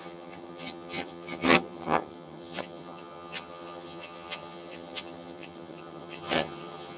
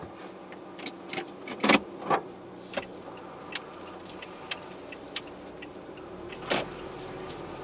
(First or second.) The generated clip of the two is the first